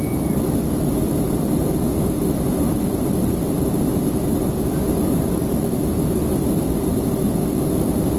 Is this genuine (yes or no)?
no